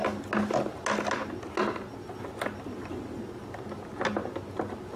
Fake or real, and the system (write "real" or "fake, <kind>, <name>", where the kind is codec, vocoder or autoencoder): real